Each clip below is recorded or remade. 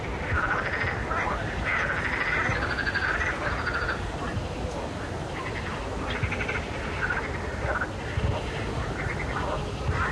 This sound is recorded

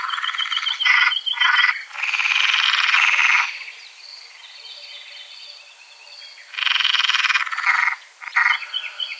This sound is recorded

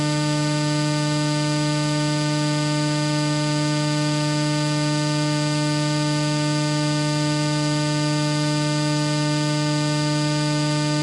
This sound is recorded